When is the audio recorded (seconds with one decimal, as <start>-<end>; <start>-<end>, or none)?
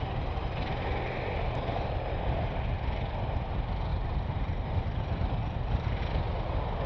0.0-3.9; 6.0-6.9